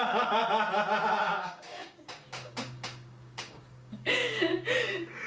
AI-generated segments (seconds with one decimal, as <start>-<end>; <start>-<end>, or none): 0.0-0.4; 1.2-5.3